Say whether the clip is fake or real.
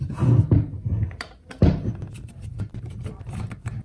real